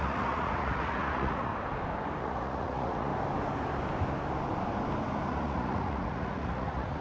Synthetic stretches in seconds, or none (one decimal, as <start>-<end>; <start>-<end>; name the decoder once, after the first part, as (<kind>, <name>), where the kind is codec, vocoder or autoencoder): 0.0-1.5 (vocoder, Vocos); 2.2-3.1; 5.3-7.0